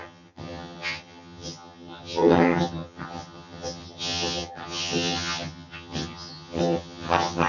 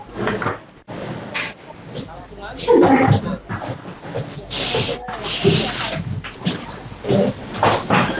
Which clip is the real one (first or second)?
second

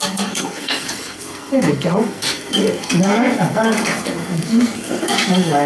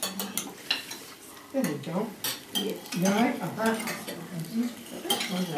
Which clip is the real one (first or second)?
second